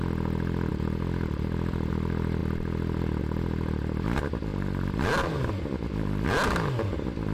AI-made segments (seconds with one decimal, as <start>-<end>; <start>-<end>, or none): none